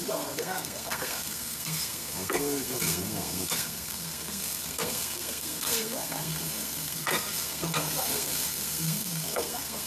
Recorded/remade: remade